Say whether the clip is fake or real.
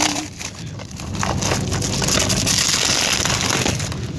real